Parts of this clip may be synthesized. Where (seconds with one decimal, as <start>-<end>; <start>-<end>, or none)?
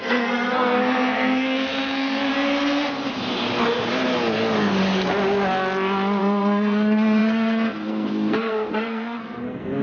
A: 0.0-2.3; 6.2-9.8